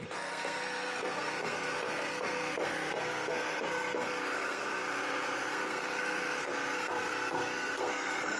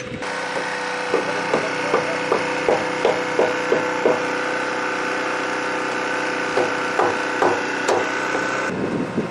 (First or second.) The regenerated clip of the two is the first